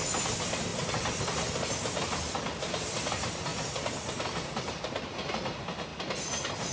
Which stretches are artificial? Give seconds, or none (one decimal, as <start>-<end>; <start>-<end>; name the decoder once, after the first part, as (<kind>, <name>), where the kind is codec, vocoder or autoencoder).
none